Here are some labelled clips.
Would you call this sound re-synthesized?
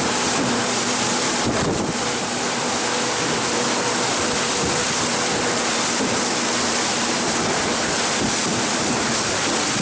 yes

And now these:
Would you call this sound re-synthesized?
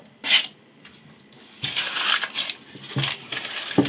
no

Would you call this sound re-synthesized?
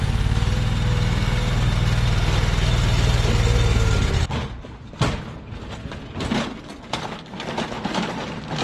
no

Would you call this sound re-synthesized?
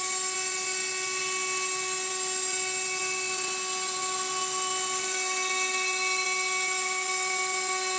no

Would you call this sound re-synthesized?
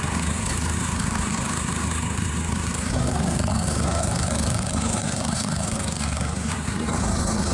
yes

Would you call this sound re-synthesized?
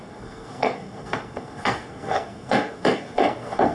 yes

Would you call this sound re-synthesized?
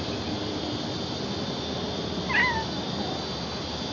no